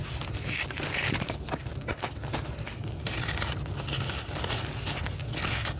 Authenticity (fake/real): real